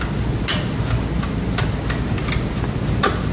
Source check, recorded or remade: recorded